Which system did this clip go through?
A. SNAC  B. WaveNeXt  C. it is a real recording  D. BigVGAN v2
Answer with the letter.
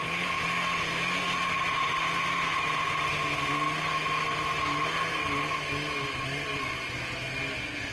C